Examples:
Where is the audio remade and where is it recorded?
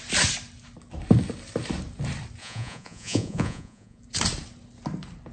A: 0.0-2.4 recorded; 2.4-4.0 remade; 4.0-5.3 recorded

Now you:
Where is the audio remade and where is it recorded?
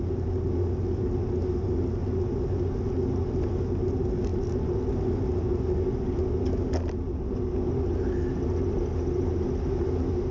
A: 0.0-10.3 recorded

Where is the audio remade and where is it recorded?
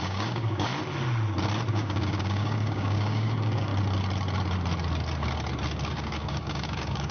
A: 0.0-0.7 remade; 0.7-1.7 recorded; 1.7-3.7 remade; 3.7-5.9 recorded; 5.9-7.1 remade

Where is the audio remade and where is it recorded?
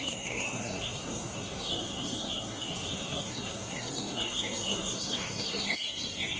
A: 0.0-6.4 remade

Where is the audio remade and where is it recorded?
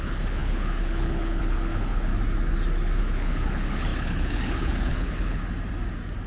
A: 0.0-2.1 remade; 2.1-3.0 recorded; 3.0-5.4 remade; 5.4-6.3 recorded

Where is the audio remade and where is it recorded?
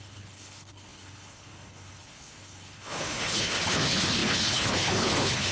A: 0.0-5.5 remade